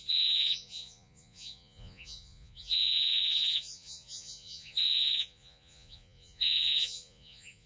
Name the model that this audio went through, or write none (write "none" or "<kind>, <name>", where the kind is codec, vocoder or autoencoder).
vocoder, Vocos